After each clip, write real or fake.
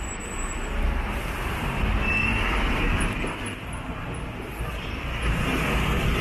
real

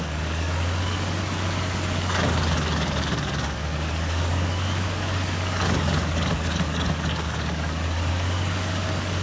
fake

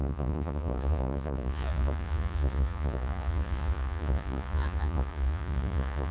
fake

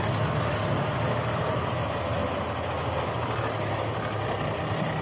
real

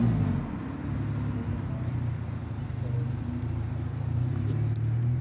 real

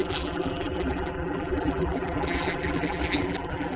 fake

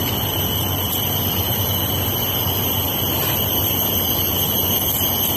real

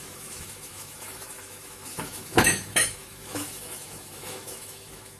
fake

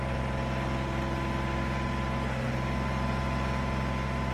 real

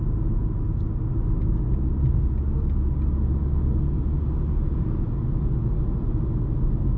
real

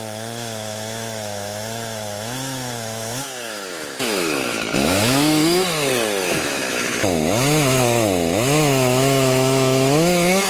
fake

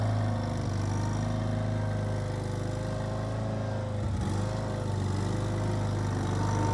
real